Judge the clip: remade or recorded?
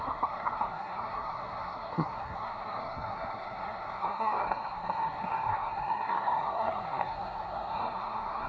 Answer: remade